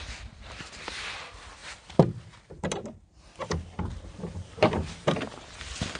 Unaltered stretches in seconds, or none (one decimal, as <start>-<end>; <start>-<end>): 0.0-1.6; 5.0-6.0